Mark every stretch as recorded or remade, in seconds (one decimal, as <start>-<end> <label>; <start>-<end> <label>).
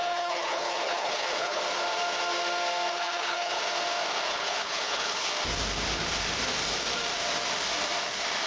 0.0-1.6 remade; 1.6-2.9 recorded; 2.9-3.6 remade; 3.6-4.3 recorded; 4.3-5.3 remade; 5.3-8.5 recorded